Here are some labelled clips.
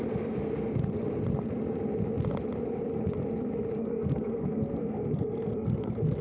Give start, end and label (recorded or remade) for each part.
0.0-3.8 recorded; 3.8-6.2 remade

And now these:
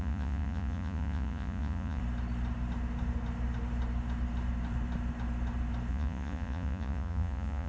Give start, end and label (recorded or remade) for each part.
0.0-2.0 remade; 2.0-5.9 recorded; 5.9-7.7 remade

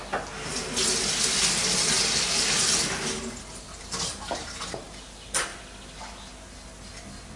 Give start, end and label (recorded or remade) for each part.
0.0-7.4 recorded

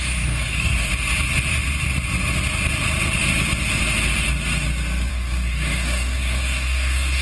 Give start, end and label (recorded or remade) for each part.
0.0-0.9 remade; 0.9-5.1 recorded; 5.1-7.2 remade

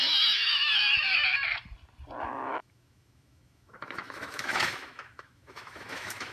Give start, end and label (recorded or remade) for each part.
0.0-1.2 remade; 1.2-2.2 recorded; 2.2-6.3 remade

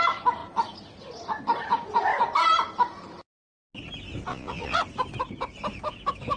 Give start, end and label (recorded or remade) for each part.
0.0-4.3 recorded; 4.3-4.8 remade; 4.8-6.4 recorded

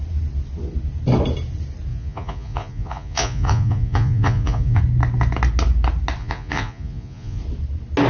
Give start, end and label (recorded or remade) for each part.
0.0-1.9 recorded; 1.9-4.8 remade; 4.8-6.2 recorded; 6.2-7.4 remade; 7.4-8.1 recorded

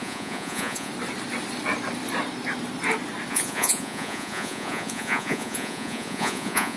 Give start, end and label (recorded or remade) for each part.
0.0-0.9 remade; 0.9-3.3 recorded; 3.3-6.8 remade